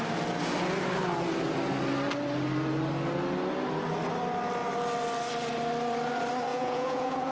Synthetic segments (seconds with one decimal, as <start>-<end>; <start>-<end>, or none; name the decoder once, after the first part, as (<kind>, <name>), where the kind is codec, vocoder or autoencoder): 6.5-7.3 (vocoder, Vocos)